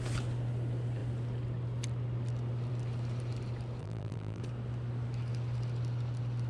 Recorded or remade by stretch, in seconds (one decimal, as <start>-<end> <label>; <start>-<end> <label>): 0.0-3.8 recorded; 3.8-4.4 remade; 4.4-6.5 recorded